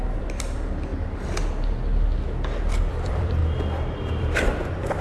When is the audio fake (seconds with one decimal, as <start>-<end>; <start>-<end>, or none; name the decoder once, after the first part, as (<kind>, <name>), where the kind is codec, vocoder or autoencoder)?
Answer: 0.0-0.9 (vocoder, BigVGAN v2); 2.9-3.4; 4.1-5.0